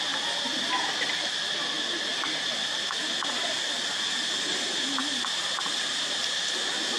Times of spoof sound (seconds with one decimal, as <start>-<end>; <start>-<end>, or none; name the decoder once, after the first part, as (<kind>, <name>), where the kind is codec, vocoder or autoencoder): none